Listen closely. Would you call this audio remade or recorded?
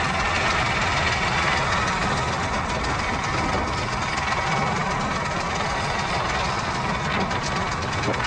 recorded